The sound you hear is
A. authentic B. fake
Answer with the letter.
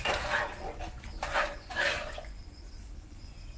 B